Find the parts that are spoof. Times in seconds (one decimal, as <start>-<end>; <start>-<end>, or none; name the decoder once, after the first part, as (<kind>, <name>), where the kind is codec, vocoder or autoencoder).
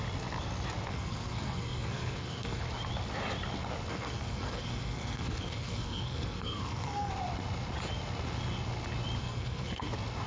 0.9-2.6 (codec, SNAC); 3.9-7.1; 9.2-9.9